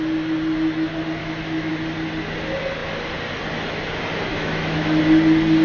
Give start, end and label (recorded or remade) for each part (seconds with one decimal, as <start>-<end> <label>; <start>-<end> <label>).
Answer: 0.0-1.2 recorded; 1.2-1.7 remade; 1.7-4.3 recorded; 4.3-5.0 remade; 5.0-5.6 recorded